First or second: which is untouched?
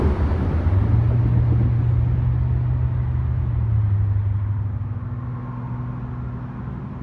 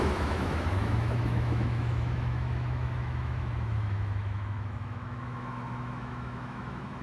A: first